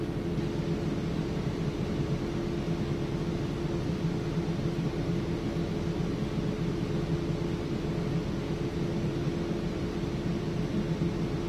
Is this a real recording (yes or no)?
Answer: yes